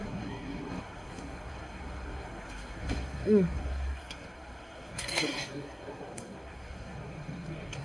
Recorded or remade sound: remade